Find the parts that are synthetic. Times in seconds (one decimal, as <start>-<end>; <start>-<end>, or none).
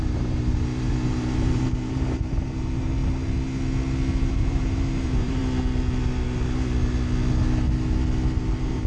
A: 0.0-3.0; 4.3-5.4; 8.4-8.9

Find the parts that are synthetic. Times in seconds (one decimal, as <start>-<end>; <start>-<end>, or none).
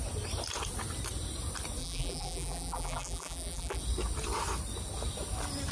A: 1.8-3.8